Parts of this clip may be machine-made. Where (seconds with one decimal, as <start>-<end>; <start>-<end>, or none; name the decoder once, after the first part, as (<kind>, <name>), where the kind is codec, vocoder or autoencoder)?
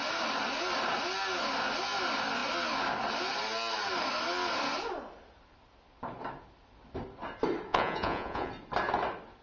7.7-8.5 (vocoder, Vocos)